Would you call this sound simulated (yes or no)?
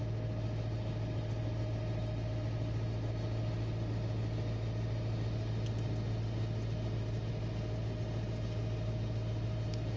no